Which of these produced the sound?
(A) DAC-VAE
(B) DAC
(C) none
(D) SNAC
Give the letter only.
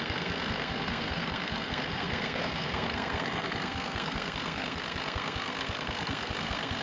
D